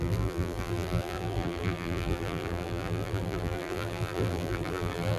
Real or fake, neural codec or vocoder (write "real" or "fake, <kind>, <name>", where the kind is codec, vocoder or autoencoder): fake, vocoder, BigVGAN v2